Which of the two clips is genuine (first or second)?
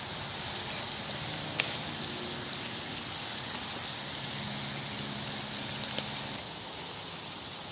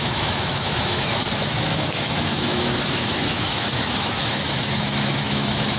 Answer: first